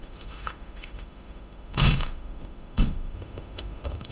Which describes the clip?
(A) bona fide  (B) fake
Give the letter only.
B